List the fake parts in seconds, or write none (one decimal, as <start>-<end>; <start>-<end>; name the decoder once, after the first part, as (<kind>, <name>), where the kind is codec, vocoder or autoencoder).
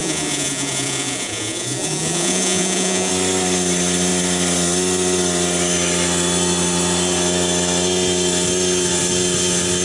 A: 0.0-3.1 (vocoder, Vocos)